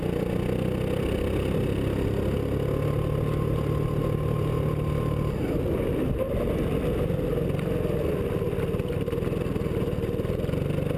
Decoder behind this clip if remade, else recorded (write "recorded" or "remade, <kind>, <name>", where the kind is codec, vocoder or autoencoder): recorded